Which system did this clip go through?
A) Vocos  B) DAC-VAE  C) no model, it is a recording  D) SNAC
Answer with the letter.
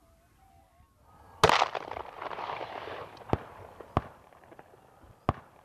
C